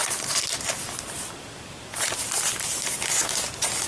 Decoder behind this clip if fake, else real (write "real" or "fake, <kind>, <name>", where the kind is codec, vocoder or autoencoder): real